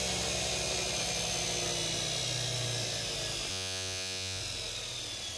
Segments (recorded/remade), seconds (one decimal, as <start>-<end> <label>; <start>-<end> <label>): 0.0-3.5 recorded; 3.5-4.4 remade; 4.4-5.4 recorded